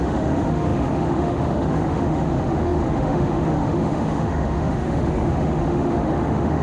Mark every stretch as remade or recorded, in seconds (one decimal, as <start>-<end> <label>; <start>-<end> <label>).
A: 0.0-6.6 remade